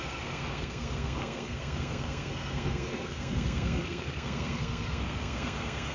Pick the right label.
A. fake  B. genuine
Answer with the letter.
A